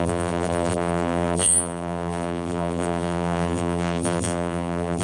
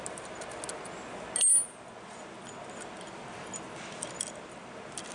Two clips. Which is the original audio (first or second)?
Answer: second